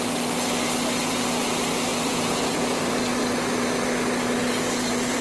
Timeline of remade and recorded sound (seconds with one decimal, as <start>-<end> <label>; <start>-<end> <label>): 0.0-1.9 recorded; 1.9-2.8 remade; 2.8-5.2 recorded